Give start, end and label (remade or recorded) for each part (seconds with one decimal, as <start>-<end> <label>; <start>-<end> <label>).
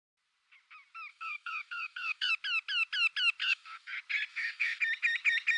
0.0-1.1 recorded; 1.1-2.3 remade; 2.3-3.4 recorded; 3.4-3.9 remade; 3.9-4.3 recorded; 4.3-4.8 remade; 4.8-5.6 recorded